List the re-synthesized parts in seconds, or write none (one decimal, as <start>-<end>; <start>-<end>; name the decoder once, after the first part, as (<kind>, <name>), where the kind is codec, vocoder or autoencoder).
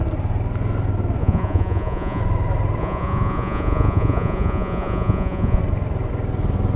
1.2-2.2 (vocoder, Vocos); 2.8-5.6